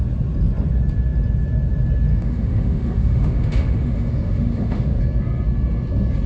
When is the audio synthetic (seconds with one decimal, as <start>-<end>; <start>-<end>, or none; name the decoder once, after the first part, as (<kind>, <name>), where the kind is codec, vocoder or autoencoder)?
2.1-5.0 (autoencoder, DAC-VAE)